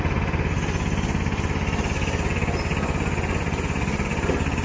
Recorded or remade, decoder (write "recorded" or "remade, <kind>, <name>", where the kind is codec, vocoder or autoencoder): recorded